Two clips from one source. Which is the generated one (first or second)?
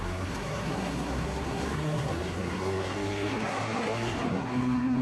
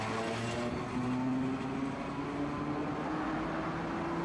first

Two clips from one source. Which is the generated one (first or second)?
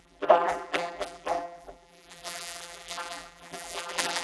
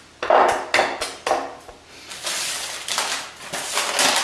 first